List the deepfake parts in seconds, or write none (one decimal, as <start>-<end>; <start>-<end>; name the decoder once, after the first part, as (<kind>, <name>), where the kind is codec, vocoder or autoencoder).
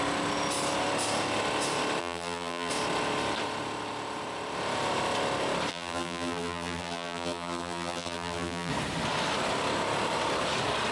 2.0-2.7 (vocoder, BigVGAN v2); 5.7-8.7